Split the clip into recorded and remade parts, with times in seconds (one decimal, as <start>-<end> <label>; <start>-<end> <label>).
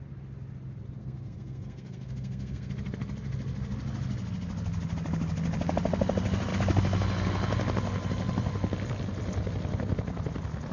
0.0-1.0 recorded; 1.0-2.7 remade; 2.7-10.7 recorded